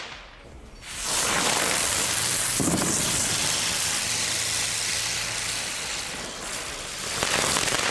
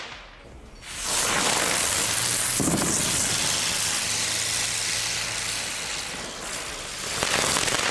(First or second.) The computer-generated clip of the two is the first